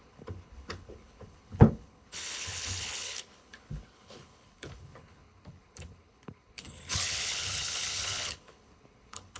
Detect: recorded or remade remade